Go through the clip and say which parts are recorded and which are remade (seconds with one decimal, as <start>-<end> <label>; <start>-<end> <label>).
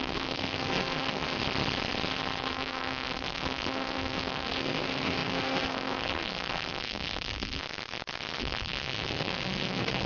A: 0.0-1.4 remade; 1.4-2.4 recorded; 2.4-7.6 remade; 7.6-8.4 recorded; 8.4-10.1 remade